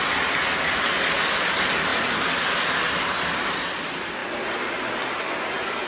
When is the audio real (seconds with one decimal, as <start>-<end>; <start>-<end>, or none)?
0.0-5.9